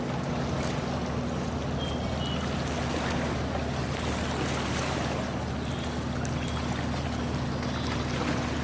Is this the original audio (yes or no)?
yes